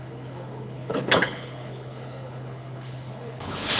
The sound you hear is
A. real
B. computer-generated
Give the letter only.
B